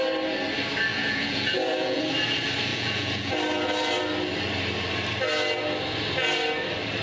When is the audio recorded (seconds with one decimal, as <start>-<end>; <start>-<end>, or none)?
0.0-0.9; 2.0-2.7; 3.3-7.0